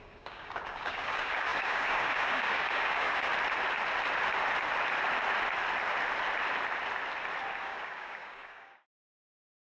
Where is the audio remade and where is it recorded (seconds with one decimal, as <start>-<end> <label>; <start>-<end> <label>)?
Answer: 0.0-3.3 remade; 3.3-7.6 recorded; 7.6-9.7 remade

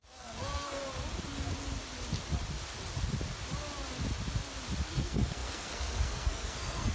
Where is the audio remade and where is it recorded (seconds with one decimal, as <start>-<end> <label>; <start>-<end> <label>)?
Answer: 0.0-0.8 remade; 0.8-4.9 recorded; 4.9-6.9 remade